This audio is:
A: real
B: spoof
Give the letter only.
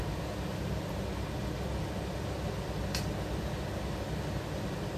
A